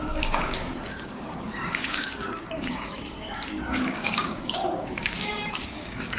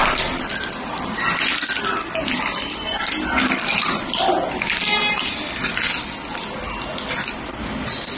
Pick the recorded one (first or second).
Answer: second